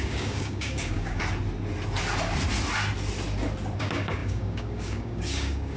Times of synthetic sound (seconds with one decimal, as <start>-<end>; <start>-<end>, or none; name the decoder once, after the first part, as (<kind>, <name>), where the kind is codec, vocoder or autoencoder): 0.0-1.2 (codec, DAC); 3.8-5.8